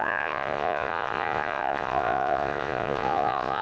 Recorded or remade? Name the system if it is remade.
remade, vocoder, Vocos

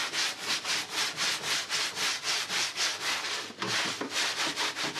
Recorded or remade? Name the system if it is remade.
recorded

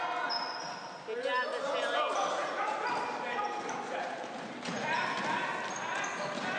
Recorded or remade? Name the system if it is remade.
recorded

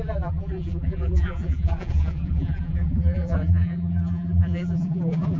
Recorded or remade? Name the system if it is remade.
remade, vocoder, BigVGAN v2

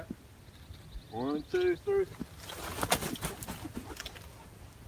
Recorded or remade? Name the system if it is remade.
recorded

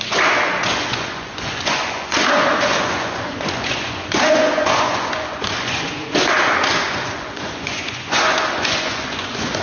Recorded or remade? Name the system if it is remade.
remade, vocoder, Vocos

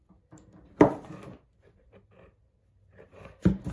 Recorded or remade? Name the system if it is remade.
recorded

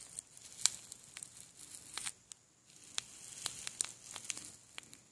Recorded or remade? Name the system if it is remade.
recorded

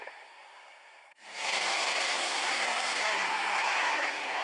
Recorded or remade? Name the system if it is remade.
remade, codec, SNAC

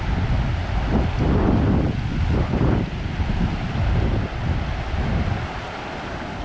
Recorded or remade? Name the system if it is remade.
recorded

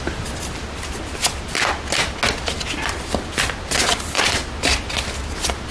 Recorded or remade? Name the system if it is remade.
recorded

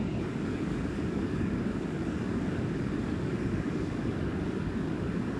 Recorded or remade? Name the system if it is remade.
remade, codec, DAC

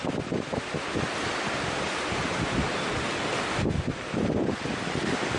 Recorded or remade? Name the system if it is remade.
remade, vocoder, BigVGAN v2